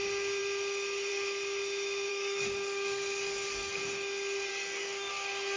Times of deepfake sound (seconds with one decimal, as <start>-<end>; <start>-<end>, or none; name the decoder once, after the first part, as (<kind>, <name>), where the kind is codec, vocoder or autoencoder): 2.1-3.8 (codec, DAC); 4.5-5.1